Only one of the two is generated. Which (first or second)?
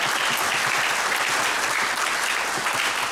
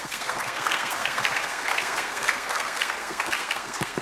second